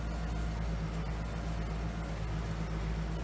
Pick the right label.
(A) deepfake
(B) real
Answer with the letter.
B